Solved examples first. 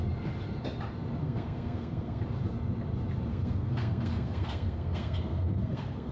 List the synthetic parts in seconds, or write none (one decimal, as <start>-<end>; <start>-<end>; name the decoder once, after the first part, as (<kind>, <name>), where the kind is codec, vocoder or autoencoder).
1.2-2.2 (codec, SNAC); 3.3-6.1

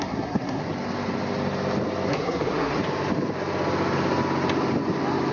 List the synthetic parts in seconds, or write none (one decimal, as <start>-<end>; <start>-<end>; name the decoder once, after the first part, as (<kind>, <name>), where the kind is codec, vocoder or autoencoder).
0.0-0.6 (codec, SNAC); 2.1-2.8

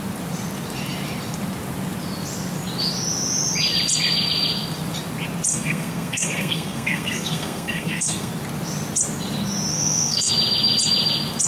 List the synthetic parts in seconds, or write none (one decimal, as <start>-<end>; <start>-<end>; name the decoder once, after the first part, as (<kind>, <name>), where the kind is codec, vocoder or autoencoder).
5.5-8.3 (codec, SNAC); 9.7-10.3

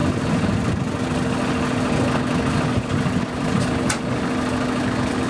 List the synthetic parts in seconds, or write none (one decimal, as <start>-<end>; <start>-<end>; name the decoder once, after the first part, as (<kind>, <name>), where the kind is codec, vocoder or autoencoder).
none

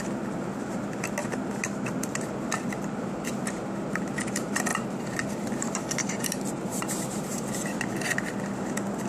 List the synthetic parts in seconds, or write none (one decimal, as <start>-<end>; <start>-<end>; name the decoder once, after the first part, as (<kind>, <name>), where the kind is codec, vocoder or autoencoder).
6.0-7.6 (vocoder, BigVGAN v2)

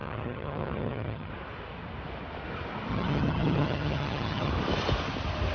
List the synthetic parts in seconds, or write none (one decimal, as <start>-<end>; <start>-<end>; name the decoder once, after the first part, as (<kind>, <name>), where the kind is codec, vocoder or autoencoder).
0.0-1.3 (vocoder, HiFi-GAN); 2.9-4.5

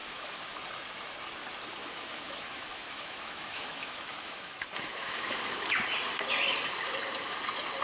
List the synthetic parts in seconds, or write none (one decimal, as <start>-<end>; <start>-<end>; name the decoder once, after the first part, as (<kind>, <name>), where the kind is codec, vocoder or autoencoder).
0.0-0.6 (autoencoder, DAC-VAE); 1.8-5.7